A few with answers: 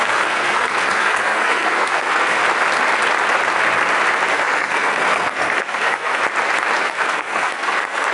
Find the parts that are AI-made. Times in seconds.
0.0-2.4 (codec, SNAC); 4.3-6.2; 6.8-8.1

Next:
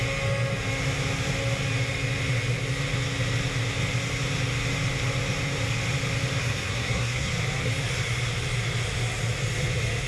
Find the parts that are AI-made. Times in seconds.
6.4-7.3 (codec, SNAC)

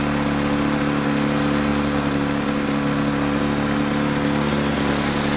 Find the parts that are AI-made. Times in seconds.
none